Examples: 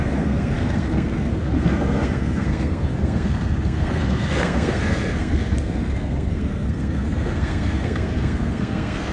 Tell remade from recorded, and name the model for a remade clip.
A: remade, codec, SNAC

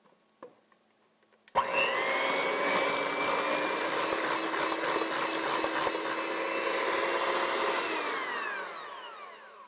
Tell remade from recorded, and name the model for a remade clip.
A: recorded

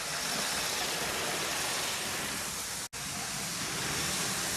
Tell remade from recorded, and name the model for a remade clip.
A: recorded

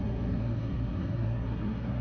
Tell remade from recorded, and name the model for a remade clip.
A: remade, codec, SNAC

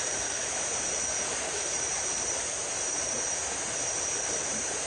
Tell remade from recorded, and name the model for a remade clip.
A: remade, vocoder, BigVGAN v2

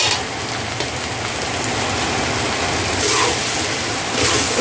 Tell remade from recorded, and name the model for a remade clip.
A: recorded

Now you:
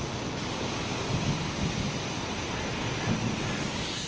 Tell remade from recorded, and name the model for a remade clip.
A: recorded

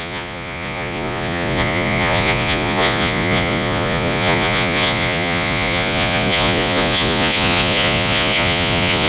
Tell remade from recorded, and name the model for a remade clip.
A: remade, vocoder, Vocos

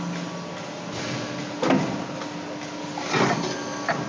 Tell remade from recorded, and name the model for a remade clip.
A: recorded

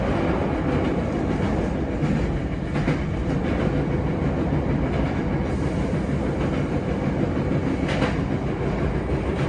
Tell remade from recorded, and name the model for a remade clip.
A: recorded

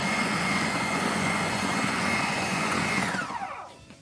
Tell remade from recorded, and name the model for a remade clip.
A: remade, vocoder, Vocos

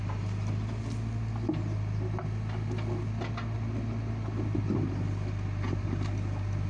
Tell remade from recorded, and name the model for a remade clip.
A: recorded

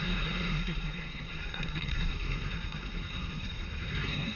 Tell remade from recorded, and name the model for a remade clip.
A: remade, codec, SNAC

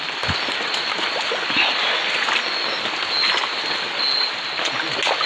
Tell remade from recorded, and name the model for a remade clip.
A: recorded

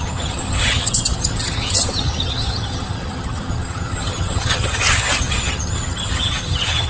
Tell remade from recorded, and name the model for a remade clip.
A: remade, vocoder, HiFi-GAN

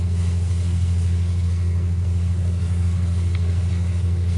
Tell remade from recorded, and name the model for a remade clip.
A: remade, codec, SNAC